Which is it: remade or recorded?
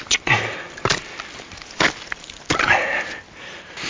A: recorded